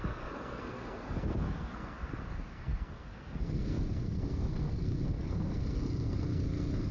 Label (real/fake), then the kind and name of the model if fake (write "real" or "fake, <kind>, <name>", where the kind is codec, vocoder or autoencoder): fake, codec, SNAC